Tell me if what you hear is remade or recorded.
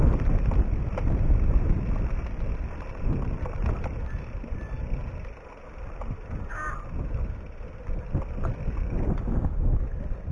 recorded